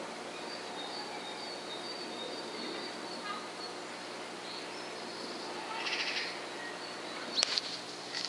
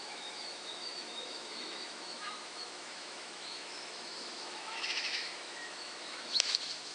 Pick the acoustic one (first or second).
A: first